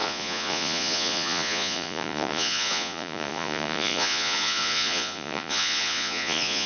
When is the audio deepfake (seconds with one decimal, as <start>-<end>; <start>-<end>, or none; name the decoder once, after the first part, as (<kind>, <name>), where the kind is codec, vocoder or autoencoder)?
0.0-6.7 (vocoder, Vocos)